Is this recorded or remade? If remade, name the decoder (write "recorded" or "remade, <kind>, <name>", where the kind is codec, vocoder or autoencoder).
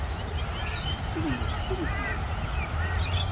recorded